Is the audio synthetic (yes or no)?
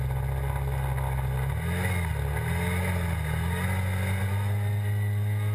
no